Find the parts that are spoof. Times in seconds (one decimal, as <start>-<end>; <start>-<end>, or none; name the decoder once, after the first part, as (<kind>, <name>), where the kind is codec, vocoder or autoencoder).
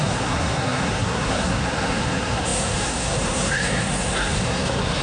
0.0-5.0 (codec, SNAC)